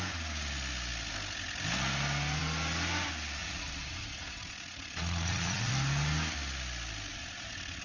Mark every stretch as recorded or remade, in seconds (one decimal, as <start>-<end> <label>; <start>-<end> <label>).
0.0-3.4 recorded; 3.4-5.7 remade; 5.7-7.1 recorded; 7.1-7.8 remade